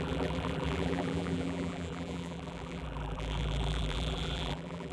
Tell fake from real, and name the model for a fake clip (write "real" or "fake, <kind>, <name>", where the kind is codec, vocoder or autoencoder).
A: fake, vocoder, BigVGAN v2